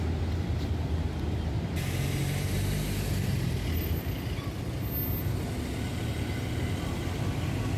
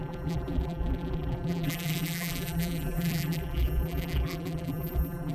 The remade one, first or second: second